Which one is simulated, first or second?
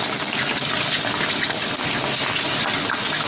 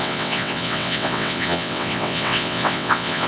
second